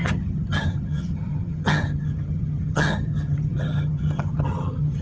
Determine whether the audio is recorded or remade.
remade